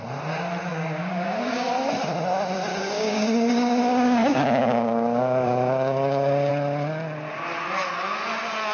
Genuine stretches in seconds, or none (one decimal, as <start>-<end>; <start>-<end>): 0.0-0.7; 1.7-2.7; 6.5-8.7